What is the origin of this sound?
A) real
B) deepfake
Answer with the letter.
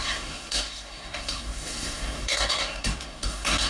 B